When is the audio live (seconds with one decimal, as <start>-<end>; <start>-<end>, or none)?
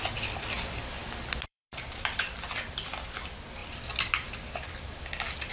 0.0-1.0; 2.5-3.6; 4.5-5.5